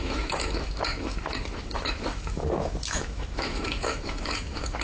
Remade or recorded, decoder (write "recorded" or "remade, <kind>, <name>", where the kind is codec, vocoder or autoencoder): remade, autoencoder, DAC-VAE